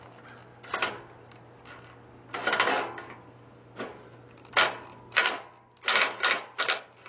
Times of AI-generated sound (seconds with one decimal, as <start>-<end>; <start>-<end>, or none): none